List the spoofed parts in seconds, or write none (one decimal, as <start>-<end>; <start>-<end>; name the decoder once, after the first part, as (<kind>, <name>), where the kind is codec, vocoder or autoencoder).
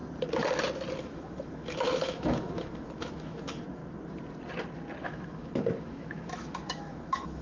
1.0-3.8 (autoencoder, DAC-VAE); 5.0-7.4